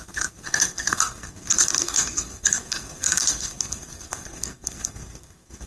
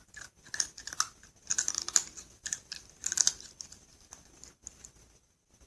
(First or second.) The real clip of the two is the second